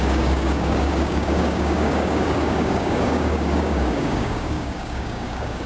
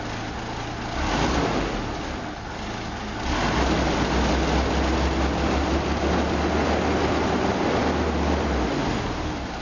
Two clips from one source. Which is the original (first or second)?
second